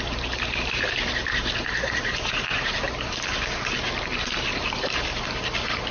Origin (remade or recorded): remade